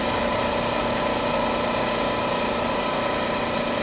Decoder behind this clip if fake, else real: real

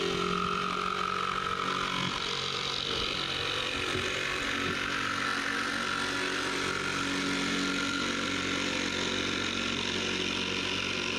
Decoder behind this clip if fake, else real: real